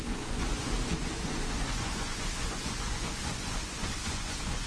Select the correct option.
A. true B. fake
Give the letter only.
B